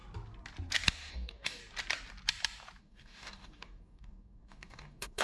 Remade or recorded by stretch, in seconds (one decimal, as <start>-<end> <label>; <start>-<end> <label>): 0.0-1.1 recorded; 1.1-1.6 remade; 1.6-2.8 recorded; 2.8-5.2 remade